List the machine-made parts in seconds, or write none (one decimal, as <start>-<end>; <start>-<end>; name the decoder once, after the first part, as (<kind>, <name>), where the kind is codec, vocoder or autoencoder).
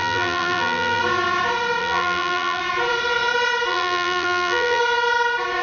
0.0-1.0 (vocoder, BigVGAN v2); 1.8-2.6; 3.7-4.8